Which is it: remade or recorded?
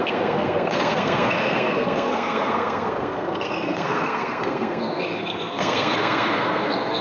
remade